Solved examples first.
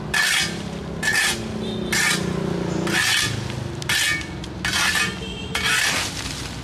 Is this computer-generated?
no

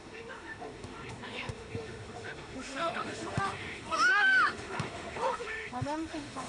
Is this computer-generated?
yes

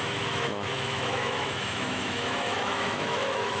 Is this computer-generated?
yes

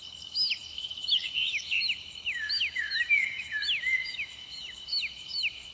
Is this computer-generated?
yes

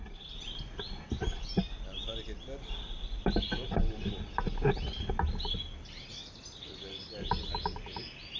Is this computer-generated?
no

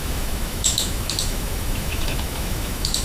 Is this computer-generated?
yes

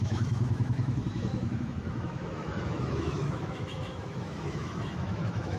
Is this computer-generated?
yes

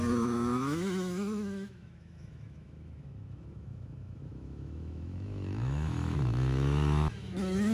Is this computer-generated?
yes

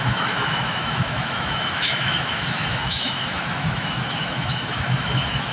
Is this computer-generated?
yes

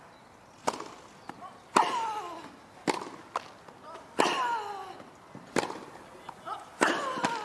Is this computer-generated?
no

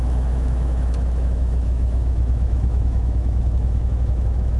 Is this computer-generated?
yes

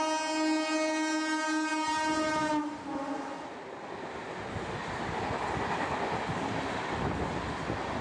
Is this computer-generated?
no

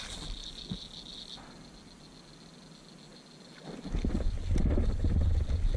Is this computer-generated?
no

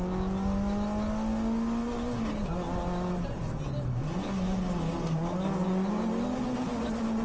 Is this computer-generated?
no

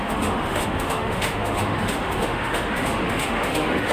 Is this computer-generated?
yes